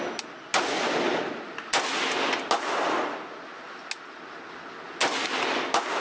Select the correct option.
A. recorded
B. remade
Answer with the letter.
A